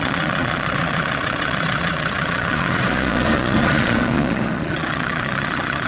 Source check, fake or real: fake